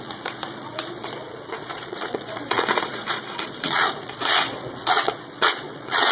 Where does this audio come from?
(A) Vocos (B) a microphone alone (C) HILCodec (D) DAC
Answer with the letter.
A